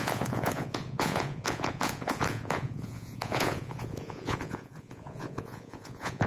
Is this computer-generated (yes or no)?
yes